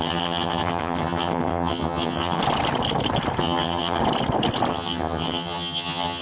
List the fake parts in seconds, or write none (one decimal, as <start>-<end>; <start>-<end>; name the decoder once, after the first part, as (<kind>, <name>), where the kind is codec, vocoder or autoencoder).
0.0-2.4 (vocoder, HiFi-GAN); 3.4-4.0; 4.7-6.2